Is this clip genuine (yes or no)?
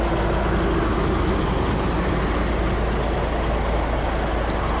yes